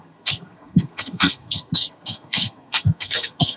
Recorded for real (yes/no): no